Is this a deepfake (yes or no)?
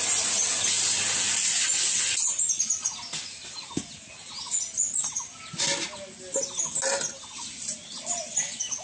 no